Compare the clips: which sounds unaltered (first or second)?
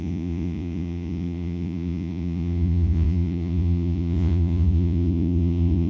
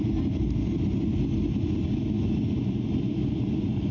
second